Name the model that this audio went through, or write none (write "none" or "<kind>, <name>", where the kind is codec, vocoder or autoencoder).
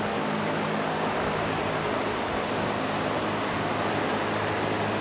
none